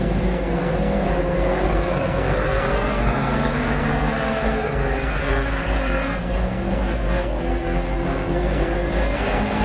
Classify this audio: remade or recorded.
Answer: remade